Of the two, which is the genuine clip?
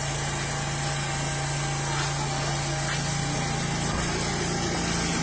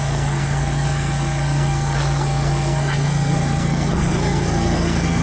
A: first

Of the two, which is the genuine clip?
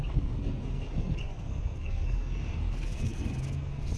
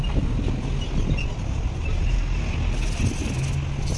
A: second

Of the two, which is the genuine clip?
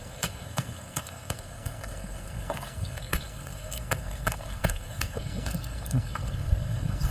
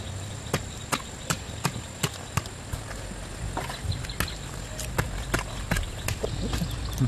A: second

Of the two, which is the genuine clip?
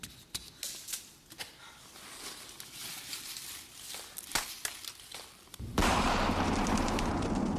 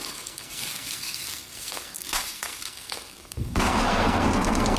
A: first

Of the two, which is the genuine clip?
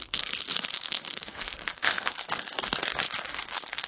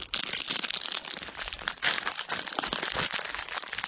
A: second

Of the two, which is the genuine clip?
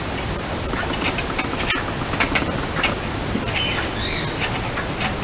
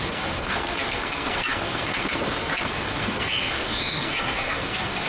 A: first